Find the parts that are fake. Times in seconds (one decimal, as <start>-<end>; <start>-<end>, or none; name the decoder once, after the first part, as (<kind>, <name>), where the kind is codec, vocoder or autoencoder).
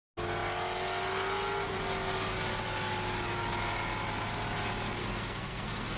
5.0-6.0 (codec, SNAC)